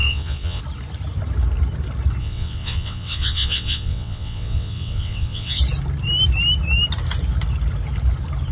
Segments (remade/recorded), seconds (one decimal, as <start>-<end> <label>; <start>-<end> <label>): 0.0-0.6 remade; 0.6-2.2 recorded; 2.2-5.6 remade; 5.6-8.5 recorded